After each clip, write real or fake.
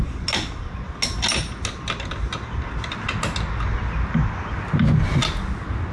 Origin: real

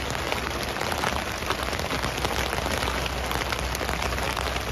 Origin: real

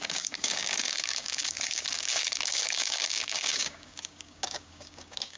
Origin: fake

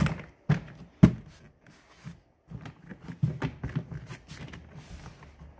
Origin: real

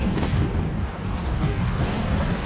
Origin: fake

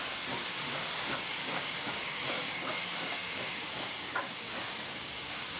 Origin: fake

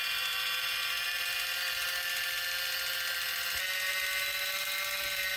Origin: real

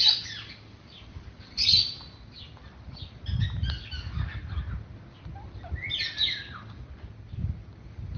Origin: real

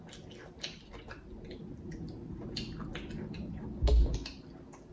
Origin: real